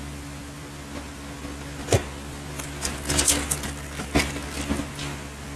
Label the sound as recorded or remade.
recorded